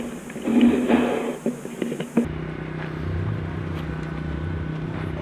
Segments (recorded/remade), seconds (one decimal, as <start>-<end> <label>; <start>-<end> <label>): 0.0-5.2 recorded